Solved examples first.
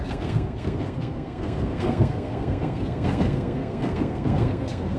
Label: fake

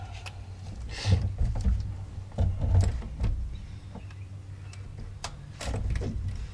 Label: real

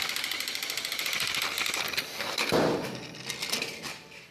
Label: real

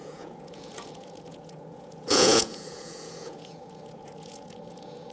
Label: fake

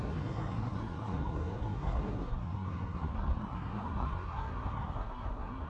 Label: fake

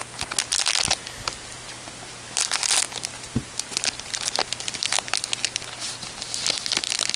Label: real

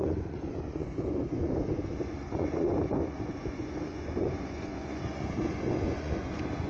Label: fake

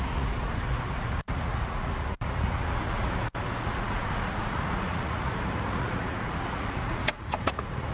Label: fake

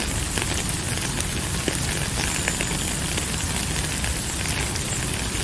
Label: real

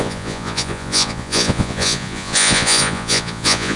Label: fake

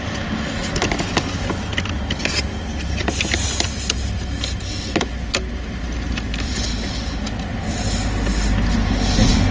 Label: real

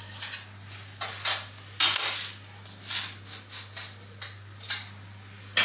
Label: real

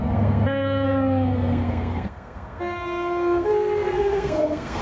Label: fake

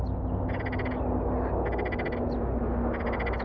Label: real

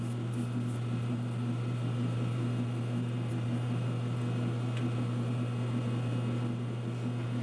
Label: real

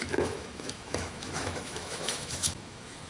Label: fake